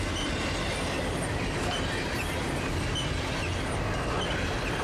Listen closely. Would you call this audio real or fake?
real